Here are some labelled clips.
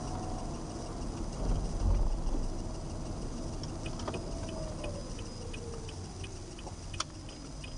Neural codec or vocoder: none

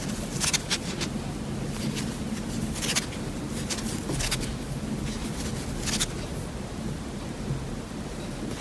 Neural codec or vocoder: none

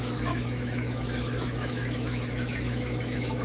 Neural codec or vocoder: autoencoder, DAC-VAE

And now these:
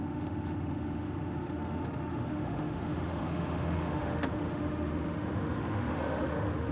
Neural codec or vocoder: autoencoder, DAC-VAE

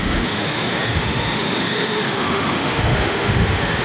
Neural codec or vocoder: autoencoder, DAC-VAE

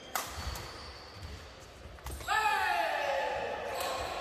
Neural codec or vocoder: none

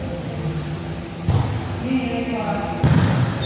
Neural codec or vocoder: none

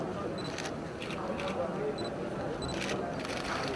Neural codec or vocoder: none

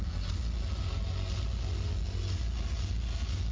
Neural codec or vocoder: none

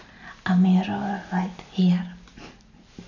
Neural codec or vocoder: none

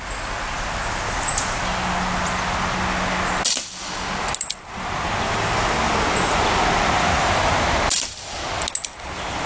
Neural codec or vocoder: none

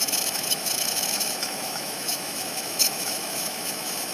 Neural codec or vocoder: autoencoder, DAC-VAE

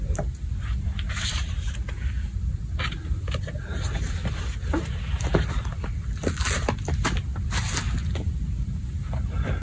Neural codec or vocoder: none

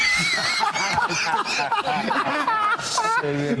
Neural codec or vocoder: none